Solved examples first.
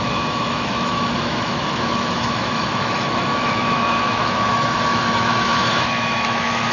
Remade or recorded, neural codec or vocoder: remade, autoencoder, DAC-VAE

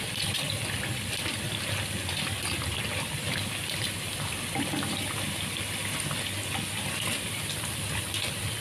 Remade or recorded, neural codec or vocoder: recorded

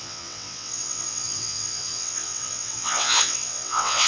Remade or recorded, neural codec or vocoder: remade, vocoder, WaveNeXt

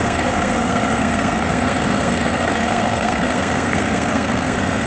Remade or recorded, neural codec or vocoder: remade, codec, SNAC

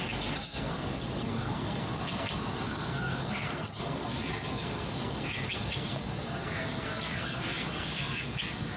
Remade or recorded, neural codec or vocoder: remade, codec, SNAC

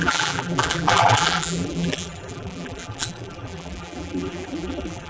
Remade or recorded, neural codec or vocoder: remade, vocoder, BigVGAN v2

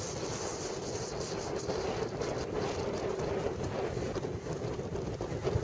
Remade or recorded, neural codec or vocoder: recorded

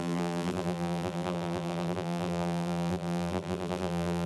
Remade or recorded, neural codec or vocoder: remade, vocoder, BigVGAN v2